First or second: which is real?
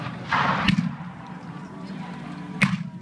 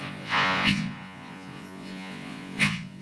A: first